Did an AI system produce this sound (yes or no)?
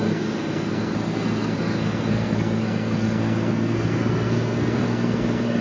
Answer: yes